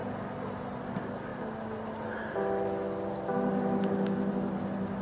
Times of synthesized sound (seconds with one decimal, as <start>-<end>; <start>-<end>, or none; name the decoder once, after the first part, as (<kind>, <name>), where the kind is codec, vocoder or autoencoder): 1.3-4.3 (vocoder, BigVGAN v2)